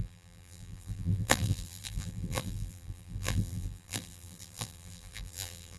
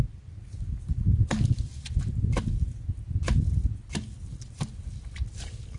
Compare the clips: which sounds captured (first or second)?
second